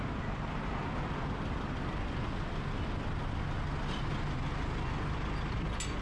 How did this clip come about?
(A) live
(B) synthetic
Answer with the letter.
A